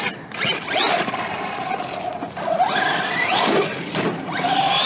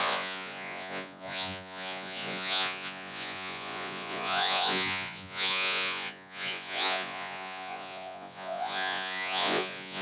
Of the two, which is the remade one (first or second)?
second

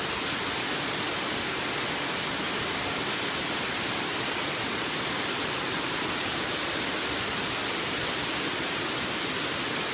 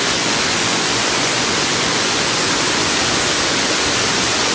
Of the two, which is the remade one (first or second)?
second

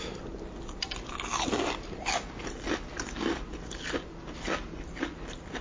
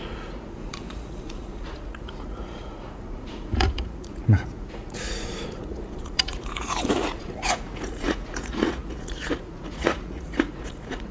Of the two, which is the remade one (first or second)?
second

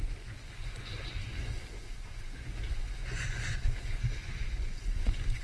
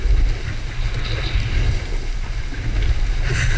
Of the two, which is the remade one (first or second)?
first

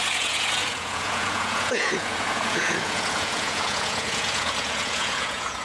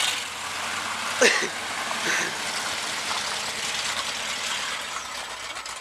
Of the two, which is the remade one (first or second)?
first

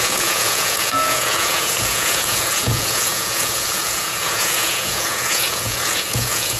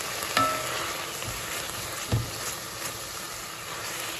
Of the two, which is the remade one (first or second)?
first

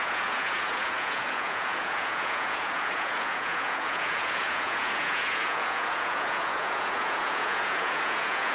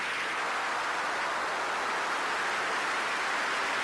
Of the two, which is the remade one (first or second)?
first